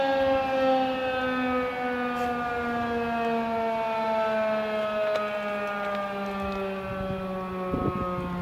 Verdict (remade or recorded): recorded